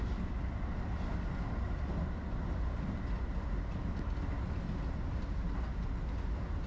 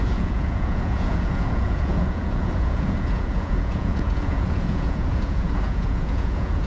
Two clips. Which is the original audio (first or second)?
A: first